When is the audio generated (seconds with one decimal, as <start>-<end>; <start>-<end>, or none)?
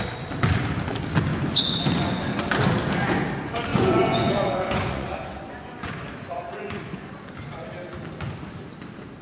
1.3-2.4; 3.7-7.1